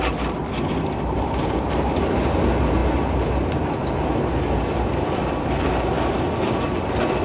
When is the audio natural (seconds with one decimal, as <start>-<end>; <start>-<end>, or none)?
0.0-0.4; 1.7-7.2